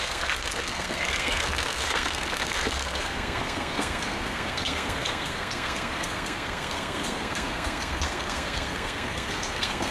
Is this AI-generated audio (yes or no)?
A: yes